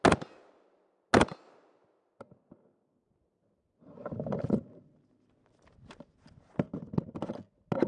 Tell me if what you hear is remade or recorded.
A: recorded